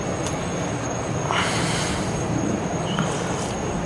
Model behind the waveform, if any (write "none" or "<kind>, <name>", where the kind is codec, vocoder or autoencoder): none